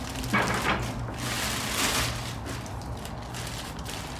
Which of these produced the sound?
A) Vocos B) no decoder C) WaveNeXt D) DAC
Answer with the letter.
B